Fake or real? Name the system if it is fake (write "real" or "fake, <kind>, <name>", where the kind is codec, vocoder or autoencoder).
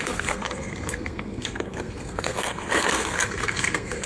fake, codec, SNAC